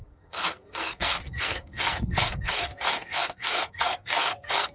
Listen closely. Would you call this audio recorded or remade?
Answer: remade